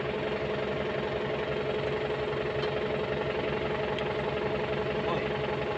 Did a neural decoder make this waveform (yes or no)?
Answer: no